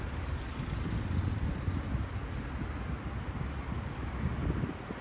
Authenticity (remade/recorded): recorded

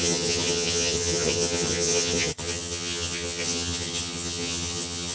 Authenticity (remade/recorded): remade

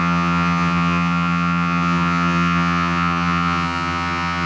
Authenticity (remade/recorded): remade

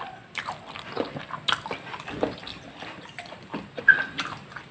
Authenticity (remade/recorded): recorded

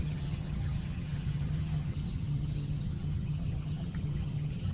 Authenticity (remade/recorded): remade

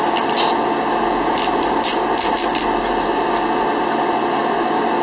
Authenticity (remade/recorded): recorded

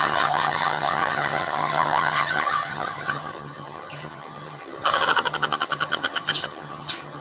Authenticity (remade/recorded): remade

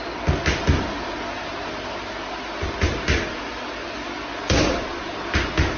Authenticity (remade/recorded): recorded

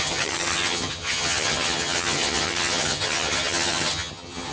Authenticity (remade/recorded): remade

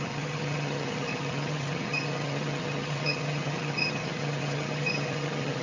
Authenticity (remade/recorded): remade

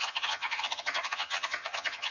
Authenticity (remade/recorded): remade